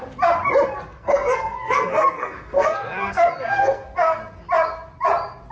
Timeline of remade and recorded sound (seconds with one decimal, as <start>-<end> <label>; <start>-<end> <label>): 0.0-0.9 recorded; 0.9-4.2 remade; 4.2-5.5 recorded